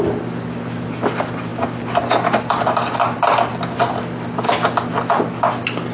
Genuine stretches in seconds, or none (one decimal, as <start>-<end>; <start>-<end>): 0.0-5.9